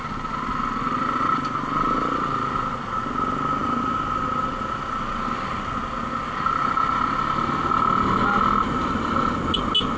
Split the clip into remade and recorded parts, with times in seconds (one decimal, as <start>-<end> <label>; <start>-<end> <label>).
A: 0.0-10.0 recorded